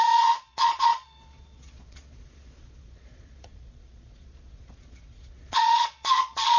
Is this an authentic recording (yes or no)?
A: no